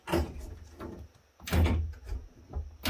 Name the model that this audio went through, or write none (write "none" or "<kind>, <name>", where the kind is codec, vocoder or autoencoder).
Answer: none